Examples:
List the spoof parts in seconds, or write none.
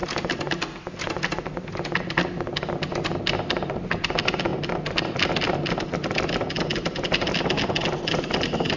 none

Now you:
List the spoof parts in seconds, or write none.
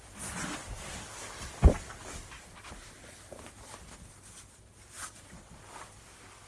0.6-2.3 (vocoder, BigVGAN v2); 3.0-5.3